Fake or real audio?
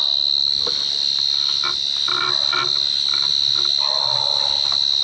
real